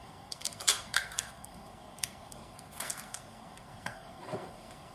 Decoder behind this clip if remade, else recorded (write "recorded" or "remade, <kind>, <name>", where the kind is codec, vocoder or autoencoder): remade, codec, SNAC